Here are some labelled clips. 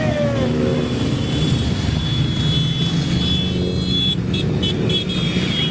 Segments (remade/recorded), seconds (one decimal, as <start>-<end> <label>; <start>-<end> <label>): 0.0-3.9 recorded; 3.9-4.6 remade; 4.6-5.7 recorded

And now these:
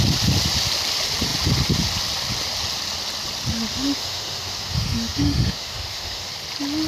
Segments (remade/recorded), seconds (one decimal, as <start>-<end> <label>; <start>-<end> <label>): 0.0-3.7 recorded; 3.7-6.3 remade; 6.3-6.9 recorded

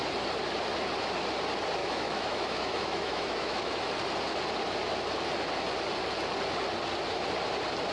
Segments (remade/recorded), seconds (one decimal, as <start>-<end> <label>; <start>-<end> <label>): 0.0-1.8 recorded; 1.8-3.7 remade; 3.7-7.9 recorded

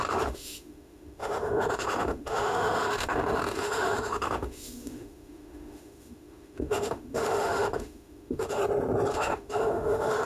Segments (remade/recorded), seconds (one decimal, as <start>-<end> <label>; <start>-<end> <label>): 0.0-8.6 remade; 8.6-9.1 recorded; 9.1-10.2 remade

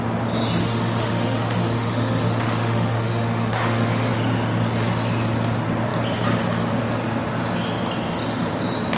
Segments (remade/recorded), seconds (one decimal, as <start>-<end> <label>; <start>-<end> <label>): 0.0-0.6 recorded; 0.6-4.1 remade; 4.1-9.0 recorded

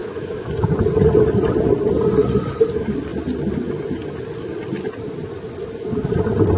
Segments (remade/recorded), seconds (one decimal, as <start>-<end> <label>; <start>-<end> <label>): 0.0-0.5 remade; 0.5-6.6 recorded

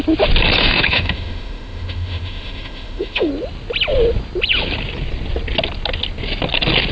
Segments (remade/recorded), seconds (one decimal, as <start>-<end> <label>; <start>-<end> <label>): 0.0-0.6 recorded; 0.6-3.3 remade; 3.3-6.9 recorded